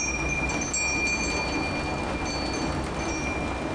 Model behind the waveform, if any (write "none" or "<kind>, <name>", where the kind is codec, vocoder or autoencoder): none